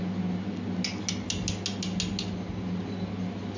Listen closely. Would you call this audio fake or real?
real